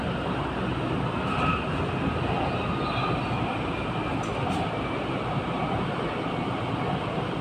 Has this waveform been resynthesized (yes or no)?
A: no